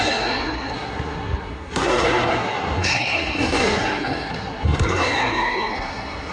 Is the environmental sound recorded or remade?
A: remade